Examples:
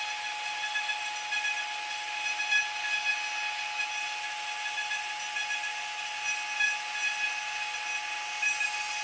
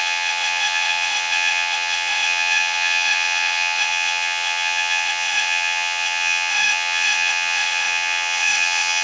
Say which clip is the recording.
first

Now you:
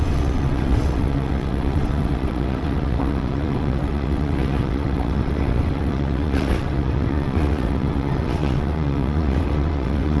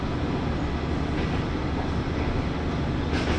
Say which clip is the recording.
second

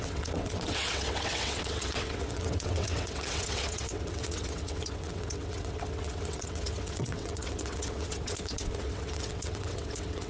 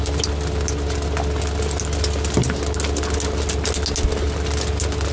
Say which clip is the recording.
second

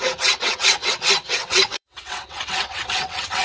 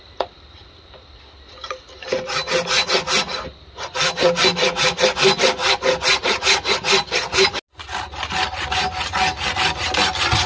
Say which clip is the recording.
second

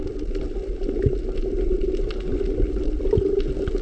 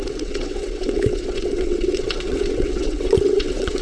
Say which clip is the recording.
first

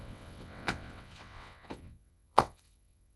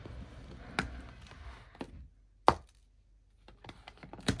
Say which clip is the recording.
second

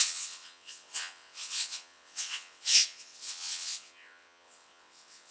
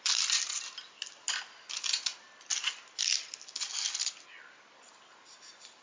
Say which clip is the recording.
second